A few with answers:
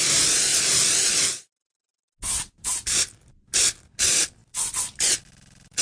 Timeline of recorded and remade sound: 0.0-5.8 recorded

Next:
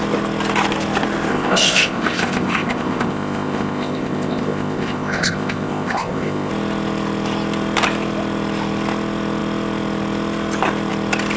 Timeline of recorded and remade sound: 0.0-1.3 recorded; 1.3-6.5 remade; 6.5-11.4 recorded

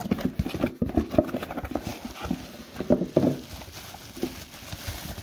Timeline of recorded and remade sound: 0.0-5.2 recorded

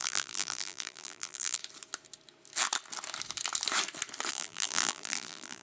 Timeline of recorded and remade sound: 0.0-1.6 remade; 1.6-4.3 recorded; 4.3-5.6 remade

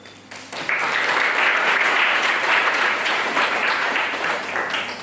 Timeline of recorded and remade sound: 0.0-1.5 recorded; 1.5-4.5 remade; 4.5-5.0 recorded

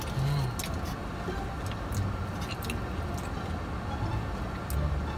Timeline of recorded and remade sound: 0.0-5.2 recorded